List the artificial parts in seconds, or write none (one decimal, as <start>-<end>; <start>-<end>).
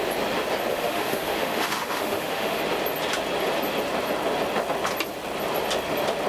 0.7-2.6